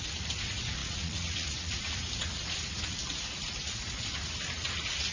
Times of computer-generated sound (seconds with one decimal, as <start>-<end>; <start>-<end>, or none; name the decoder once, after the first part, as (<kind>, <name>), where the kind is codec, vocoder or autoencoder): 0.0-5.1 (vocoder, Vocos)